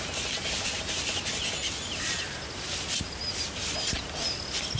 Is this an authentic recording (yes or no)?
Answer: yes